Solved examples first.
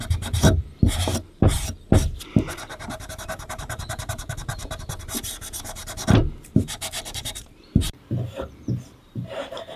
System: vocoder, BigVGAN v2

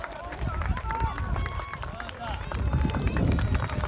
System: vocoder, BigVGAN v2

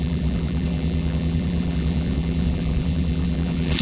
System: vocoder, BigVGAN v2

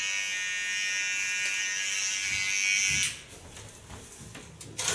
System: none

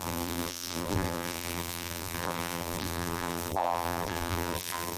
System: vocoder, BigVGAN v2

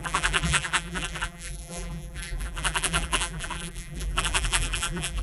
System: vocoder, BigVGAN v2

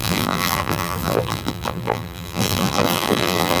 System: vocoder, BigVGAN v2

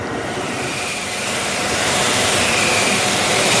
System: vocoder, BigVGAN v2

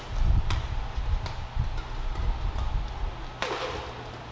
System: none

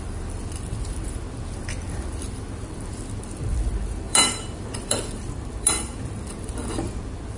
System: vocoder, BigVGAN v2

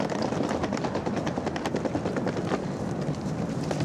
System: vocoder, BigVGAN v2